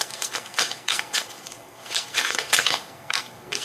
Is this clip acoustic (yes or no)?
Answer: no